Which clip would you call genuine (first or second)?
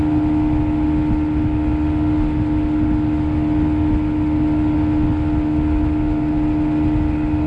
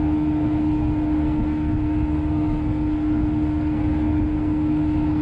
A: first